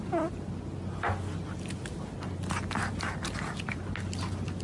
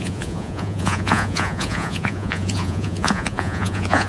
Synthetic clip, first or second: second